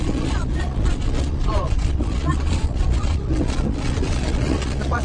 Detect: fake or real fake